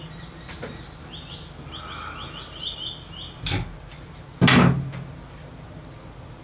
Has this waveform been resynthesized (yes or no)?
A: no